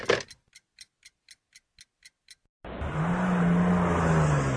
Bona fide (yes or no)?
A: yes